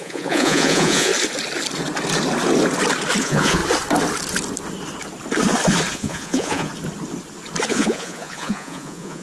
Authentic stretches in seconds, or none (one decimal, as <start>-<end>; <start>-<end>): 1.1-3.2; 3.6-5.9; 6.7-7.7